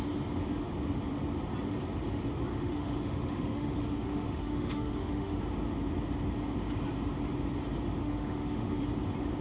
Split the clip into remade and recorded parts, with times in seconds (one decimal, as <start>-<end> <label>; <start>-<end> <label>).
0.0-2.5 recorded; 2.5-5.4 remade; 5.4-8.0 recorded; 8.0-8.8 remade; 8.8-9.4 recorded